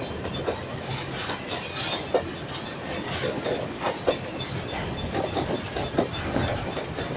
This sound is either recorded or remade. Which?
recorded